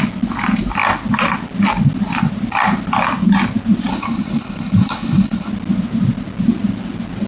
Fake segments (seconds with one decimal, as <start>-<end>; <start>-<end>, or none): 3.9-5.5